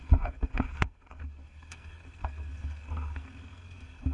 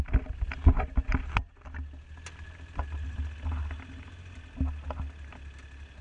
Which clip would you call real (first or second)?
second